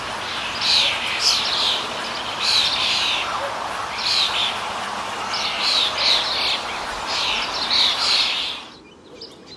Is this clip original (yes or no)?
yes